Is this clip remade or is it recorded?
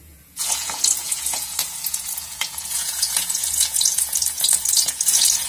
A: remade